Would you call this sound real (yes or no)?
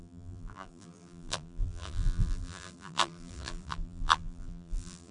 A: no